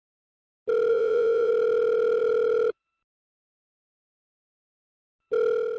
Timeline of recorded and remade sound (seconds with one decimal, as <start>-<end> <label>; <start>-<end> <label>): 0.0-0.9 recorded; 0.9-1.5 remade; 1.5-5.8 recorded